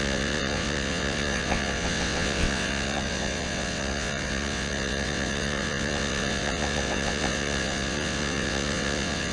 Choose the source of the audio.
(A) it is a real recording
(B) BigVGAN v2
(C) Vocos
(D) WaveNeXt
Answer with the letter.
D